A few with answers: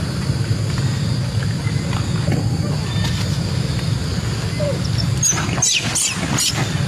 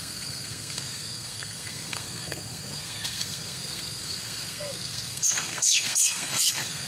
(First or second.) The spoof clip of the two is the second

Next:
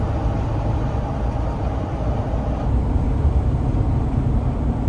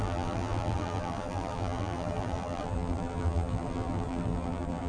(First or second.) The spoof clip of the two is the second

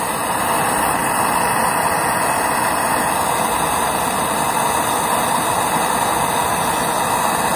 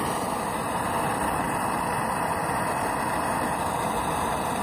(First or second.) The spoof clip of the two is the second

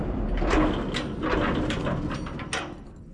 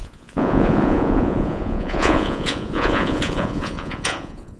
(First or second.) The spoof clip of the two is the second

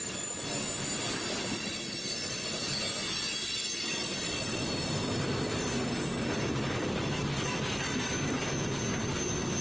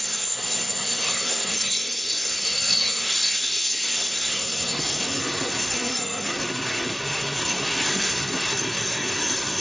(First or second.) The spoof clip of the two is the second